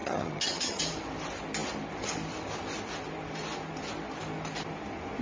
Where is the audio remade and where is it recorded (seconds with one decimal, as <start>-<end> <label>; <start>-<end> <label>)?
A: 0.0-0.8 remade; 0.8-5.2 recorded